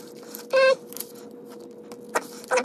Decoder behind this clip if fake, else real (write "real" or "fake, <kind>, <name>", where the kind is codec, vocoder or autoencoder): real